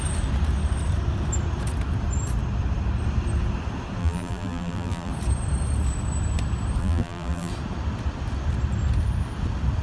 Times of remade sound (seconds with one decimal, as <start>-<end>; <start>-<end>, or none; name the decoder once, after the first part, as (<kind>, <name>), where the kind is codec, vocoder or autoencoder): 4.0-5.1 (vocoder, BigVGAN v2); 6.8-7.5